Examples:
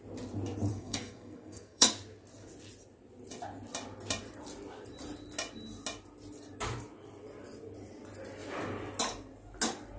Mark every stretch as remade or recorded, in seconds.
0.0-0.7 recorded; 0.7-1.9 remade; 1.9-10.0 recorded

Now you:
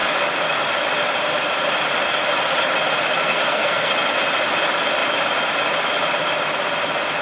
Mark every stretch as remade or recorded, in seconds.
0.0-3.2 recorded; 3.2-3.9 remade; 3.9-7.2 recorded